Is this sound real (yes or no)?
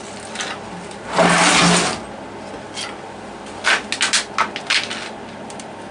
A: yes